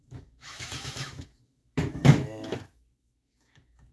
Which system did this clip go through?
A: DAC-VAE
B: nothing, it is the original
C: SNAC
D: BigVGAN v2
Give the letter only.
A